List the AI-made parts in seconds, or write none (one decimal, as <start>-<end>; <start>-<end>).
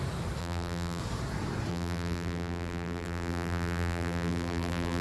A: 0.4-1.0; 1.7-5.0